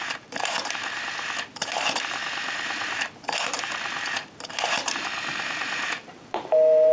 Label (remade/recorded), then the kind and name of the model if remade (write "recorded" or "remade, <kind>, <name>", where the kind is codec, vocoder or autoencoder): remade, vocoder, BigVGAN v2